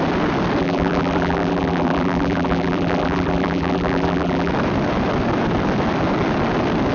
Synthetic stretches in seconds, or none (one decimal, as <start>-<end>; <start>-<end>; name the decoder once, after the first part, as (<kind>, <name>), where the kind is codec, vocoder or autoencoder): 0.6-4.5 (vocoder, BigVGAN v2)